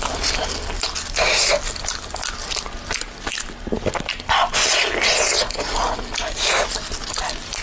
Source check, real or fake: real